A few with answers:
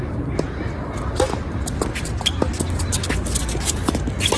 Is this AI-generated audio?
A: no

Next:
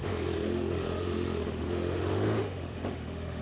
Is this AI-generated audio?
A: yes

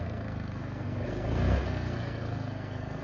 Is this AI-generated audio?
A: yes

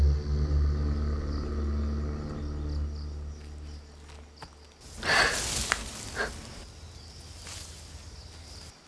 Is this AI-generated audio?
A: no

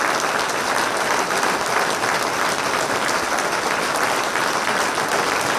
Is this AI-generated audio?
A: no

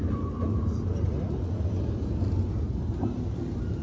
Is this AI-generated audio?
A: no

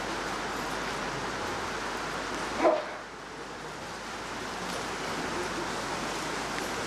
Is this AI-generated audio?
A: no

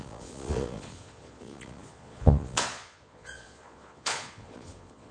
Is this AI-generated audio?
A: yes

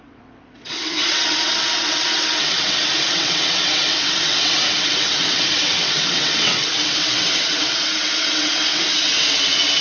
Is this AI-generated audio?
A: yes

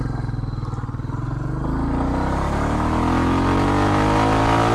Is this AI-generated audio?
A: no